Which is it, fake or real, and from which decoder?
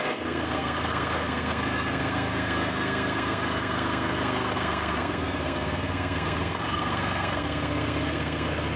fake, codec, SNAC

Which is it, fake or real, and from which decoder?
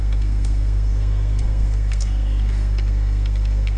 fake, codec, SNAC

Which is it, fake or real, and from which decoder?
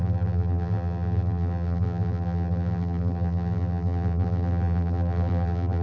fake, vocoder, BigVGAN v2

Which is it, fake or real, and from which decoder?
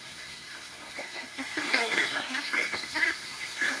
fake, codec, SNAC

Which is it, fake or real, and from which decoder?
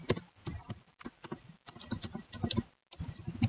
real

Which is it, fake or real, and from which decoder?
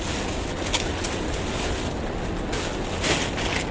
real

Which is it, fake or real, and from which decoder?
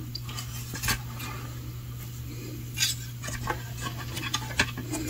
real